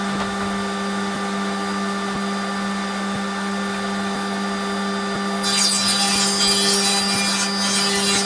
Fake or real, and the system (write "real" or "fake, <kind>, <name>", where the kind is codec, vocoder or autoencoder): real